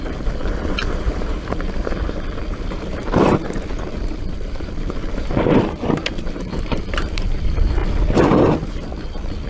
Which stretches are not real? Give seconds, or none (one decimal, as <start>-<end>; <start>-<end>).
0.0-7.8; 8.7-9.5